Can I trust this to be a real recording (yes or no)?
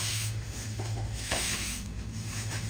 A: no